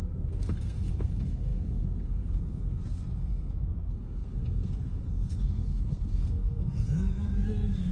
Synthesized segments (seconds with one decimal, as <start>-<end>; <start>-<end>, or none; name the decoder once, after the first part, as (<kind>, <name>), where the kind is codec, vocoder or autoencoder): 0.0-7.9 (codec, SNAC)